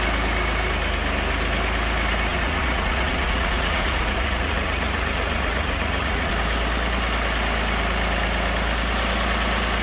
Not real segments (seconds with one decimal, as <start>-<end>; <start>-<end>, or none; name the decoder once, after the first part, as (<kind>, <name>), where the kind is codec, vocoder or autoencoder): 2.3-6.3 (vocoder, Vocos)